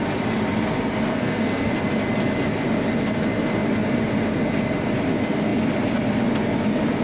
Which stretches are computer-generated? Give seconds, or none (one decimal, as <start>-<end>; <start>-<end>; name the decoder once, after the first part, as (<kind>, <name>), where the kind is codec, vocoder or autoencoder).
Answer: 1.1-1.7 (codec, SNAC)